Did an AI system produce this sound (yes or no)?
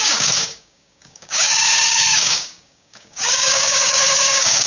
yes